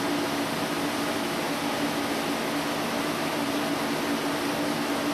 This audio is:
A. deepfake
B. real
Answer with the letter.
B